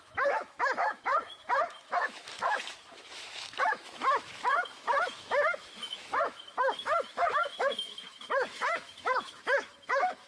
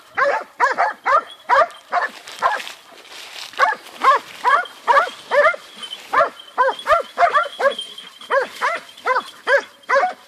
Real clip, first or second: second